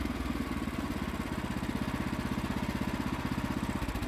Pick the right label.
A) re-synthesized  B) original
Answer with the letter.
B